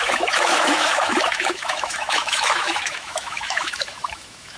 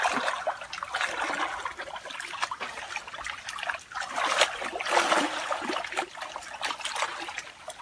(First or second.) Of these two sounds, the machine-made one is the first